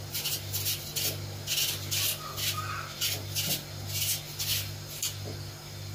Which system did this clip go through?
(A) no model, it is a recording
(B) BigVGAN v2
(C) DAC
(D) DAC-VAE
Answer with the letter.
A